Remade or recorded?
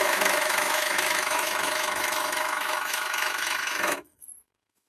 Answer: remade